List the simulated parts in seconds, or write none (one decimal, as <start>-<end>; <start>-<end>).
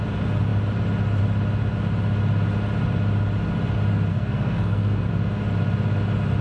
4.1-5.1